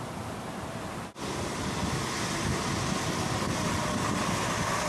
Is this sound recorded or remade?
recorded